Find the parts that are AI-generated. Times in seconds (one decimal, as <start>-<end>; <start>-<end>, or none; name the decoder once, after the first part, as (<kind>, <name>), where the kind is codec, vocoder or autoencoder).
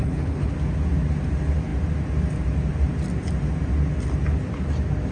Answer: 0.0-0.5 (codec, HILCodec)